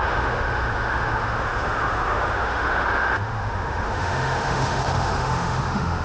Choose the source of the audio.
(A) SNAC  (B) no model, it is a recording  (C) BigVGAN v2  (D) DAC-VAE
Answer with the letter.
D